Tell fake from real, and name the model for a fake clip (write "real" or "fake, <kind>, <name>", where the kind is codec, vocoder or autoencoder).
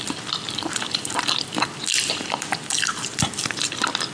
fake, vocoder, BigVGAN v2